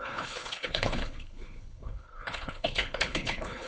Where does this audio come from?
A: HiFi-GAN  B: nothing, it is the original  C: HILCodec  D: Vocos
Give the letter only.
C